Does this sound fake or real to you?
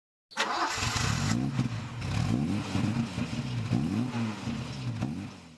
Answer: real